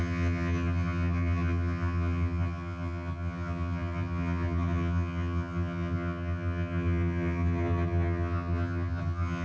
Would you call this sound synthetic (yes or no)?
yes